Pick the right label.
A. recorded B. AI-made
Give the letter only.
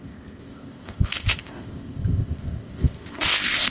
B